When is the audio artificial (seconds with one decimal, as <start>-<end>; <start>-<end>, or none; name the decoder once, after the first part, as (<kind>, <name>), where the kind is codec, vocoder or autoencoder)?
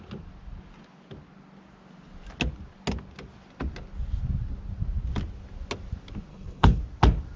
6.3-6.8 (codec, HILCodec)